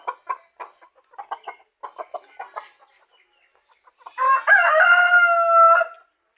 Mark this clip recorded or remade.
recorded